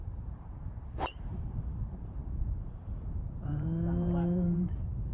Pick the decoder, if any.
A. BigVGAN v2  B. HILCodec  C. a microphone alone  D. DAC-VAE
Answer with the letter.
A